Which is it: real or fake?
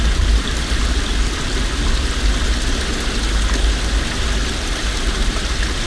real